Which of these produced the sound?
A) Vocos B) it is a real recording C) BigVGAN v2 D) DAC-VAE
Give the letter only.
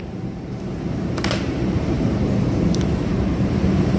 C